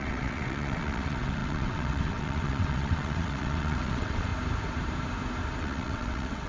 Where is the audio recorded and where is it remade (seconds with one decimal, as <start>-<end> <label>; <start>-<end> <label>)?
0.0-4.3 remade; 4.3-5.6 recorded; 5.6-6.5 remade